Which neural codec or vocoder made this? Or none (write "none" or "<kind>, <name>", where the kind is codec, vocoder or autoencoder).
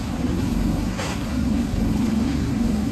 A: codec, SNAC